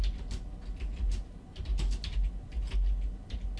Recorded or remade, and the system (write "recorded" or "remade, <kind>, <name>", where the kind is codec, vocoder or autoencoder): recorded